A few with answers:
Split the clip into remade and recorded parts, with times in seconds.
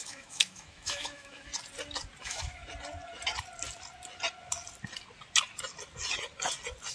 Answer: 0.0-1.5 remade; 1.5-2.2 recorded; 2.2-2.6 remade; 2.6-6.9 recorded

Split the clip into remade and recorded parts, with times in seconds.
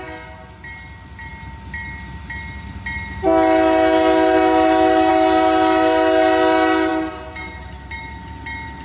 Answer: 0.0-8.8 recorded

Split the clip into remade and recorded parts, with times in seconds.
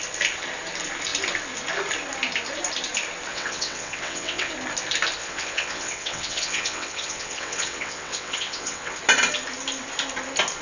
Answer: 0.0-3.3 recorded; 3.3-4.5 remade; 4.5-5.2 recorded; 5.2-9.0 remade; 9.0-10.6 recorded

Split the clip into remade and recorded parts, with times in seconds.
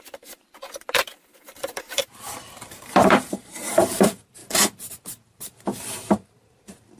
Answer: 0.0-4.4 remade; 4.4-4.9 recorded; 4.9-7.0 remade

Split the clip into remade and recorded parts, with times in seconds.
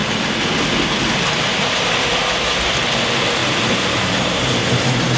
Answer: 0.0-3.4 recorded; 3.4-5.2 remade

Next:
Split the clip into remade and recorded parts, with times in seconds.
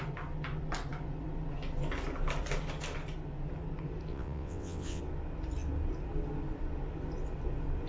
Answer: 0.0-4.1 recorded; 4.1-5.0 remade; 5.0-7.9 recorded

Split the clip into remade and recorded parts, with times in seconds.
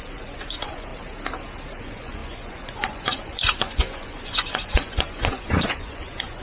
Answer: 0.0-0.9 remade; 0.9-1.8 recorded; 1.8-6.4 remade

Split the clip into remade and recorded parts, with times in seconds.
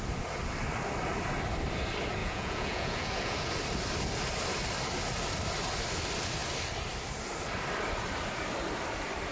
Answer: 0.0-2.2 recorded; 2.2-3.5 remade; 3.5-9.3 recorded